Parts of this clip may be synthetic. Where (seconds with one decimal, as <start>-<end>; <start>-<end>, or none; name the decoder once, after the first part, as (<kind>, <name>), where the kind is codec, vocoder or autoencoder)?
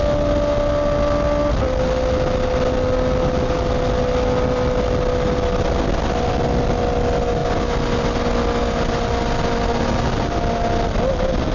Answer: none